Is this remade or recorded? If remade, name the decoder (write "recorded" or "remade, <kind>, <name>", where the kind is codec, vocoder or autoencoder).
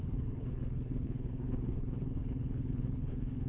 remade, codec, HILCodec